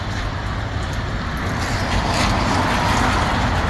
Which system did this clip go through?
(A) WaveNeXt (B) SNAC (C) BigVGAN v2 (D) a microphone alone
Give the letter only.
D